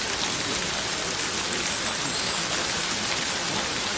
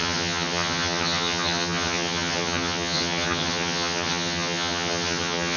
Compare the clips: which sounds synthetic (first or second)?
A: second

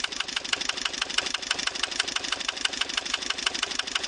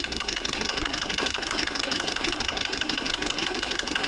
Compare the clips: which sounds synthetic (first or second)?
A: second